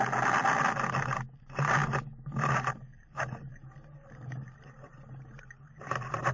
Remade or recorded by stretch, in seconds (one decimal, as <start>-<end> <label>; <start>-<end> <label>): 0.0-6.3 recorded